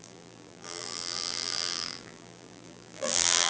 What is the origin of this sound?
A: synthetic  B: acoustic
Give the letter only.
A